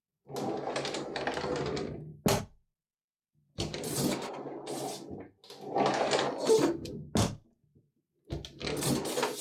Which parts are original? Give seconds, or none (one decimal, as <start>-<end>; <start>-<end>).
0.0-9.4